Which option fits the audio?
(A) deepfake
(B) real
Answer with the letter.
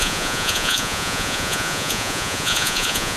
A